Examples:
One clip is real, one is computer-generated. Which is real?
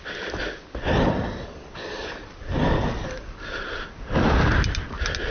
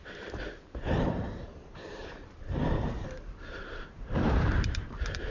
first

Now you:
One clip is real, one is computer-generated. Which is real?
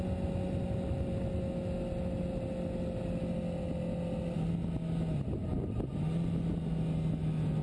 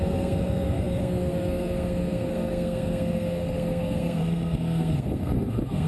first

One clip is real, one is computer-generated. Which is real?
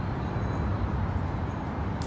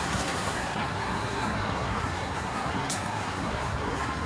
first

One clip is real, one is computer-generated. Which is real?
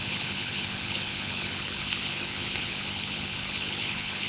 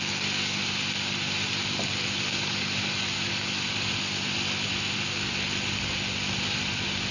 second